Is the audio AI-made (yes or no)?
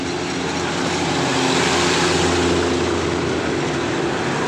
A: no